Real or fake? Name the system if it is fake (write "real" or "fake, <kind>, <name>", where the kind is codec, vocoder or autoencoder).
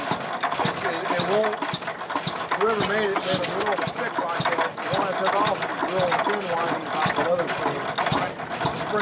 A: real